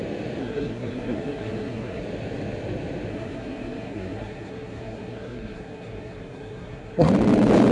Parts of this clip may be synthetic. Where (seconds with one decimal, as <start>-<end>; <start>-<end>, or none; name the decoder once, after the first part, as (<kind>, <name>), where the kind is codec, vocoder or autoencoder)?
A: 0.4-2.0 (codec, SNAC); 3.1-7.1